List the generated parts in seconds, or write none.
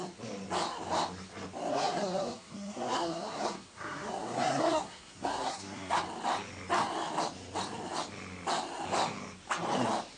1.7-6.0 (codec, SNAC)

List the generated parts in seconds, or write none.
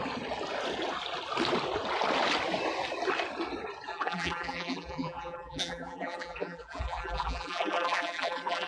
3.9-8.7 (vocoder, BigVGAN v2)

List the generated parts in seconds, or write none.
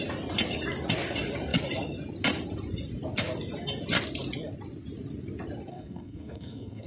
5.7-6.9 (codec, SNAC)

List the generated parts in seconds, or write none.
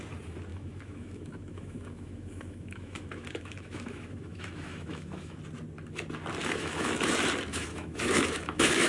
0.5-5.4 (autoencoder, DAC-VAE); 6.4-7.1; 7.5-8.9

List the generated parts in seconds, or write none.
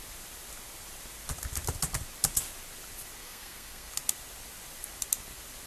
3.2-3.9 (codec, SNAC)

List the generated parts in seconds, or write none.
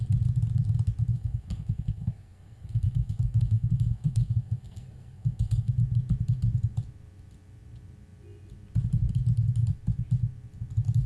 1.1-5.7 (codec, SNAC)